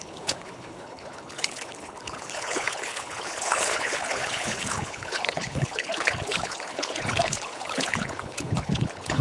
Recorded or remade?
remade